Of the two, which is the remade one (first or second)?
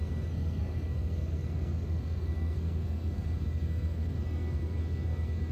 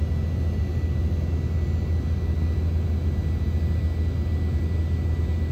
first